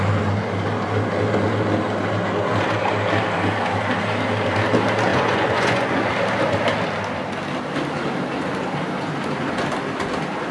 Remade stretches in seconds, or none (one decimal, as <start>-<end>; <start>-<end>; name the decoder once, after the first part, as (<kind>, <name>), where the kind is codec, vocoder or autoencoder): 5.1-6.0 (vocoder, Vocos)